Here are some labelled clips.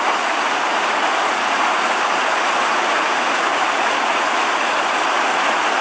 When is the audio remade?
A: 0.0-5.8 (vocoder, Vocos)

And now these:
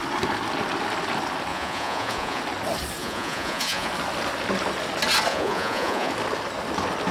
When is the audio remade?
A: 1.5-2.4 (vocoder, Vocos); 3.0-3.9; 5.3-6.1

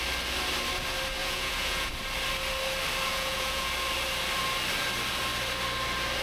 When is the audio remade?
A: 1.2-1.9 (vocoder, Vocos); 3.1-3.7

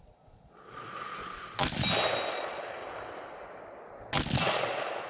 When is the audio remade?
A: 0.0-1.2 (vocoder, Vocos); 2.3-2.8; 4.4-5.1

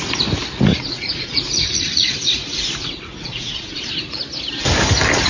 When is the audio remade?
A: 0.7-3.9 (vocoder, Vocos)

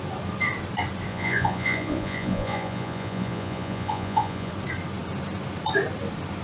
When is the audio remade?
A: 1.1-4.5 (vocoder, Vocos)

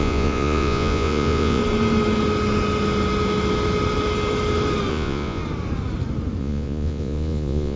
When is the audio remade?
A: 0.0-1.6 (vocoder, Vocos); 4.9-5.4; 6.4-7.8